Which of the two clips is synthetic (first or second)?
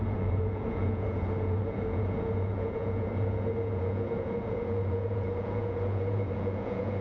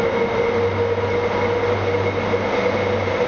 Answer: first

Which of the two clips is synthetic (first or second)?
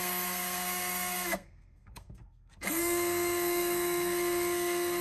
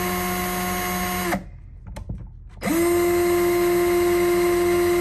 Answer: first